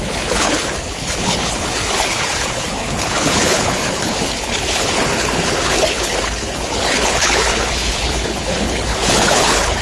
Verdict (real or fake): fake